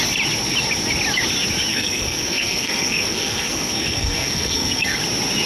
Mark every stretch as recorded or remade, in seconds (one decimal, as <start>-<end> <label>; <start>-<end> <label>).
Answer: 0.0-1.7 recorded; 1.7-5.0 remade; 5.0-5.5 recorded